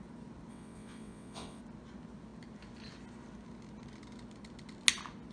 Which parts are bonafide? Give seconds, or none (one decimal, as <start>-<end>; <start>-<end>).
0.0-0.5; 1.6-5.3